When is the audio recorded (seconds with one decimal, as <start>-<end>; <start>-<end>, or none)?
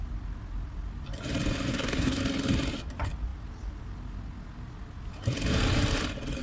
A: 0.0-1.7; 2.2-6.4